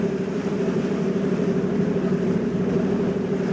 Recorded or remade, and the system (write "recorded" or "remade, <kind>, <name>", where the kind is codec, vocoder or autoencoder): remade, vocoder, BigVGAN v2